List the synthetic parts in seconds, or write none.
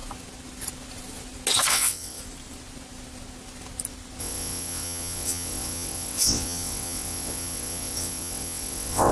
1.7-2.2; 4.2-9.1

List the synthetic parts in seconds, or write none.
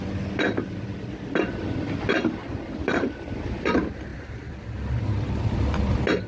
2.4-3.0; 4.1-5.0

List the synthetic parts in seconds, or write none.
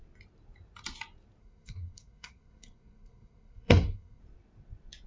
1.4-4.2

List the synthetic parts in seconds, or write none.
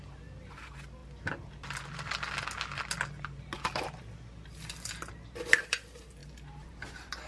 0.0-1.0; 3.2-7.3